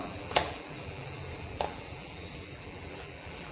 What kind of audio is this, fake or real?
fake